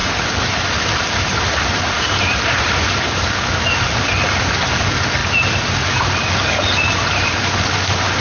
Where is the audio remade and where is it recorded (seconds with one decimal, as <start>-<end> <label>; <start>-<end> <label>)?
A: 0.0-8.2 recorded